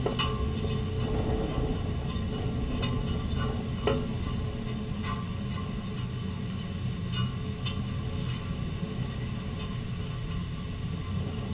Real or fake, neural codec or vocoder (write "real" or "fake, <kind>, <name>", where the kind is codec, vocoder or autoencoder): real